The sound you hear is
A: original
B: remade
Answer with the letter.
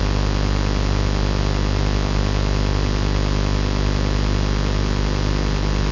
A